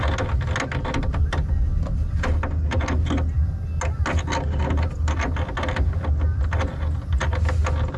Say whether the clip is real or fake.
real